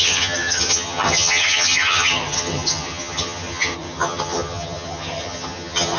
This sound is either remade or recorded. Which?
remade